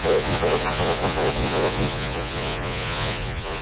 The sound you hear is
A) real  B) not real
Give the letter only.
B